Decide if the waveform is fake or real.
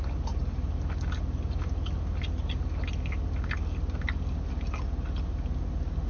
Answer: real